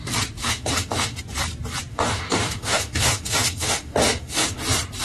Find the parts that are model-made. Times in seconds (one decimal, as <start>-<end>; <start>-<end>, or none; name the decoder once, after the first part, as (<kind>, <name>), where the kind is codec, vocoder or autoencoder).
0.4-1.2 (autoencoder, DAC-VAE); 1.9-4.6